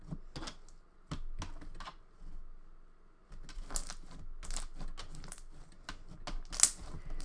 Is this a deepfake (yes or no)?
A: no